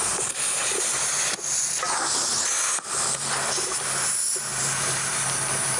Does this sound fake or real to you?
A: real